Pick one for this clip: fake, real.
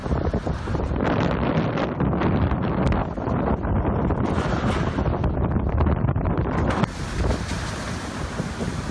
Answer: fake